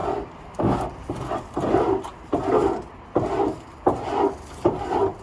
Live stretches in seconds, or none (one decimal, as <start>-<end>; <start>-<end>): 0.6-5.2